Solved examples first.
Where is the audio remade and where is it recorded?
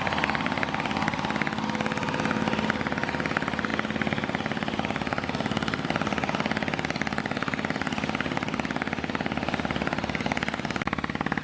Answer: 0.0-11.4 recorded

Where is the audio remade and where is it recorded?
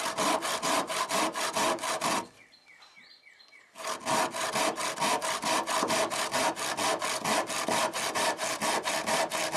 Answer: 0.0-9.6 recorded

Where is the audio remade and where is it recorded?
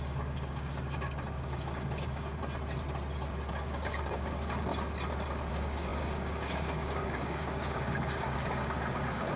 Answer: 0.0-2.4 remade; 2.4-3.5 recorded; 3.5-4.7 remade; 4.7-5.5 recorded; 5.5-9.4 remade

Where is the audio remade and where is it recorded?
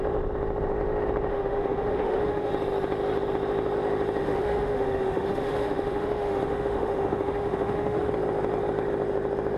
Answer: 0.0-1.3 recorded; 1.3-2.5 remade; 2.5-4.2 recorded; 4.2-8.1 remade; 8.1-9.6 recorded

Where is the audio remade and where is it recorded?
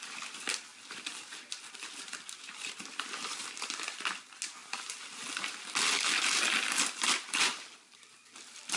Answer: 0.0-8.8 recorded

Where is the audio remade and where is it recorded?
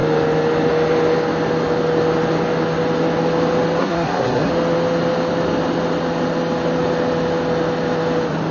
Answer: 0.0-3.8 recorded; 3.8-4.5 remade; 4.5-8.5 recorded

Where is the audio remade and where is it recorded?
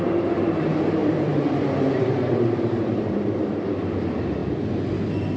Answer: 0.0-4.4 remade; 4.4-5.4 recorded